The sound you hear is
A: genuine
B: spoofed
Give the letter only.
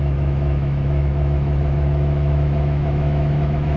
B